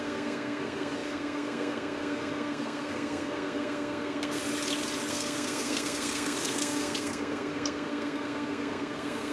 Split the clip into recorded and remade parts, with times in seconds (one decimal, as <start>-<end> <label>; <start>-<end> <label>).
0.0-4.4 remade; 4.4-5.1 recorded; 5.1-9.3 remade